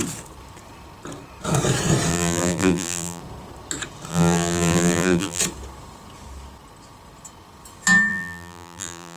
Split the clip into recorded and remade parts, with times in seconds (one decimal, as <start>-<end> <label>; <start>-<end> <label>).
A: 0.0-2.1 recorded; 2.1-3.2 remade; 3.2-4.1 recorded; 4.1-5.4 remade; 5.4-8.1 recorded; 8.1-9.2 remade